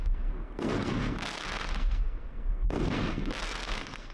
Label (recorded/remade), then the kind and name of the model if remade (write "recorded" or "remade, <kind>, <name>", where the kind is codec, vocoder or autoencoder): remade, codec, SNAC